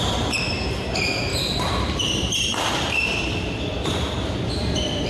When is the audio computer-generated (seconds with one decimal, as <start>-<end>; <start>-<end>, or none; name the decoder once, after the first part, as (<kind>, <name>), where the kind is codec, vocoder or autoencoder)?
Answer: 0.0-5.1 (vocoder, BigVGAN v2)